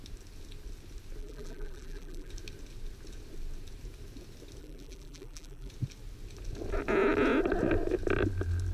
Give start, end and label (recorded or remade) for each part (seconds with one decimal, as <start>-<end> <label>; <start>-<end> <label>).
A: 0.0-1.2 recorded; 1.2-2.3 remade; 2.3-4.6 recorded; 4.6-5.7 remade; 5.7-8.7 recorded

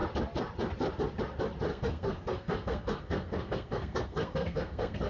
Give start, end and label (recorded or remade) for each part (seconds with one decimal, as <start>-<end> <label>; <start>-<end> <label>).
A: 0.0-1.7 recorded; 1.7-5.1 remade

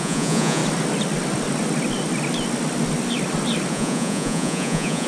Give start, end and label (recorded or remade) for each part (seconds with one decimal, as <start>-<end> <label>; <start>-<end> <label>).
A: 0.0-0.6 remade; 0.6-3.7 recorded; 3.7-5.1 remade

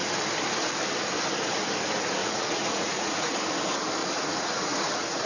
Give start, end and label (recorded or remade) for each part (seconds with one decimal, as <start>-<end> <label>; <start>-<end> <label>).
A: 0.0-2.2 recorded; 2.2-3.3 remade; 3.3-4.0 recorded; 4.0-5.3 remade

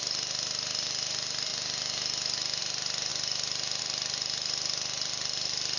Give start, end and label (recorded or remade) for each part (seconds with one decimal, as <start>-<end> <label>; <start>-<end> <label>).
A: 0.0-1.5 remade; 1.5-2.6 recorded; 2.6-3.1 remade; 3.1-3.8 recorded; 3.8-5.8 remade